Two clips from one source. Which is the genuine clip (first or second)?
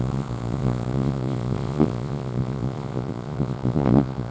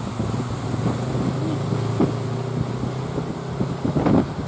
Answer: second